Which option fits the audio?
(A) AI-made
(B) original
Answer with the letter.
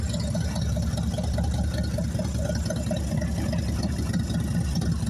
B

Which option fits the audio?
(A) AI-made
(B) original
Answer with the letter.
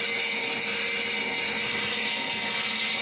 B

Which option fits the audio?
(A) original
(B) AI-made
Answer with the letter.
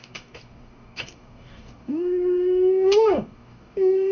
B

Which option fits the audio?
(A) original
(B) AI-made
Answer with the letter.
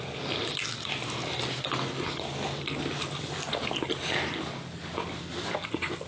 A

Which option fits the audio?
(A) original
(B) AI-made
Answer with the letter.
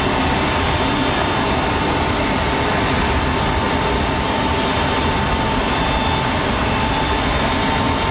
A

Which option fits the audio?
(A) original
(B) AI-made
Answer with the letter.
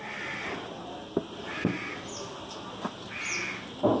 A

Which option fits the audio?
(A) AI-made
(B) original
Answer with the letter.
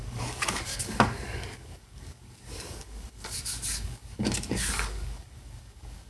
A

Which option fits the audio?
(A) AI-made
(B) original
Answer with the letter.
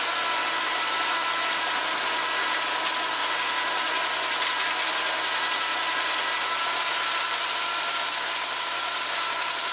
B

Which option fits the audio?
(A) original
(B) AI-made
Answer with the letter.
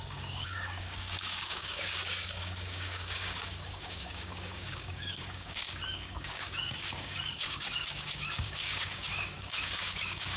B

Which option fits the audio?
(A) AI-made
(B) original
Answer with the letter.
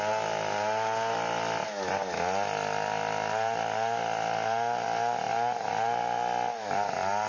B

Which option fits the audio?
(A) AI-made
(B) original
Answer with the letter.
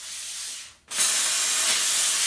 B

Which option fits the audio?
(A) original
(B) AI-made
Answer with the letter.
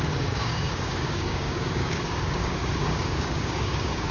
B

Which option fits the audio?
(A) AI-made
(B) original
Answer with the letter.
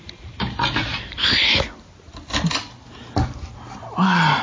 B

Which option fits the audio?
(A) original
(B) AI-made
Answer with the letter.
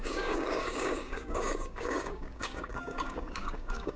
B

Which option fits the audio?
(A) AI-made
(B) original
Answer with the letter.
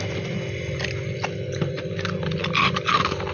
B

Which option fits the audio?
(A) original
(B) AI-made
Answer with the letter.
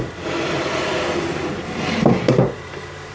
A